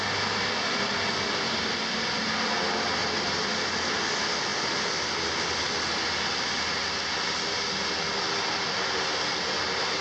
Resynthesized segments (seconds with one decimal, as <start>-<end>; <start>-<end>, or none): 3.0-3.9